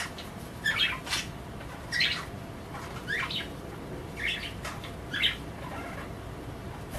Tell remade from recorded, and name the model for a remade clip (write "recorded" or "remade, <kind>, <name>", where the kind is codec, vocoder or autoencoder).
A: recorded